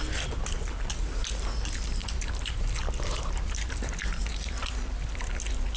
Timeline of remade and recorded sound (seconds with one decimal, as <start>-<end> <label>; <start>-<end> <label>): 0.0-2.0 recorded; 2.0-4.9 remade; 4.9-5.8 recorded